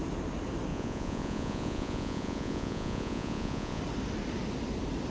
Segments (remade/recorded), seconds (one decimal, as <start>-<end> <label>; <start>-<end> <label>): 0.0-0.7 recorded; 0.7-3.8 remade; 3.8-5.1 recorded